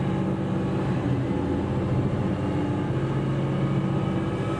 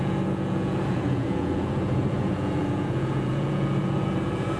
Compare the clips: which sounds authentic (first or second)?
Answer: first